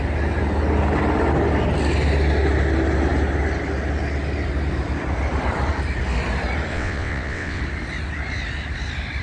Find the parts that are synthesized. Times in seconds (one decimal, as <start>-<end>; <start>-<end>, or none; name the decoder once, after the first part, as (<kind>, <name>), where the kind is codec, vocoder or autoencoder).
6.7-7.6 (vocoder, WaveNeXt)